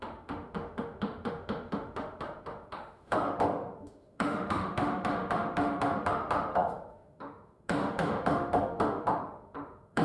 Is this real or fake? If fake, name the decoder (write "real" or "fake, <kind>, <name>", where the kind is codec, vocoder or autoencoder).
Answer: fake, autoencoder, DAC-VAE